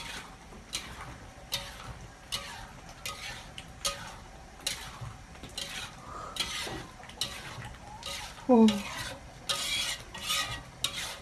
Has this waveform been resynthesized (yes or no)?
no